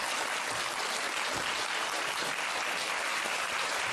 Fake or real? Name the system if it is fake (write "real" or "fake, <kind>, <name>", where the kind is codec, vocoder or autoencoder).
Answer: real